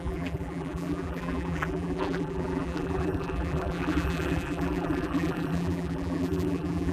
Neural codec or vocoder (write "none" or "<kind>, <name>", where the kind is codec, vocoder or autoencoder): vocoder, BigVGAN v2